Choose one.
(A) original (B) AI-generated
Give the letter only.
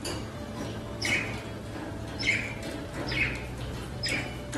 A